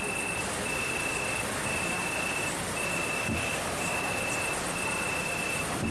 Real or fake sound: real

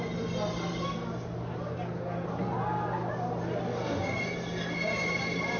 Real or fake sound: real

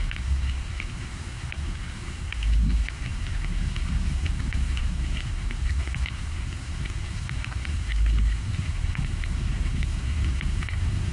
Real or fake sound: fake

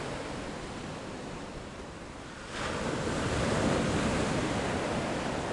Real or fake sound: real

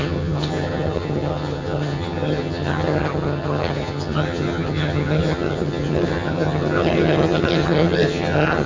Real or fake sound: fake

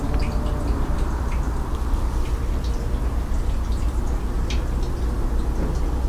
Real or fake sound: real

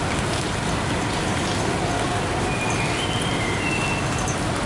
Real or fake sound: real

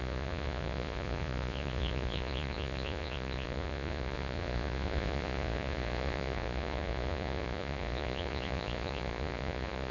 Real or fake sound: fake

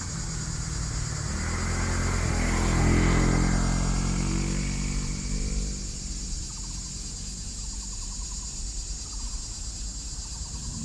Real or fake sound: real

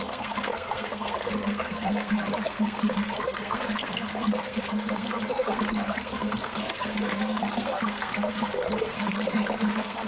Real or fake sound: fake